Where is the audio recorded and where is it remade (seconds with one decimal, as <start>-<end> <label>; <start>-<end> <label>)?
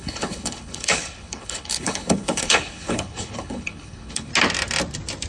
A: 0.0-4.3 remade; 4.3-5.3 recorded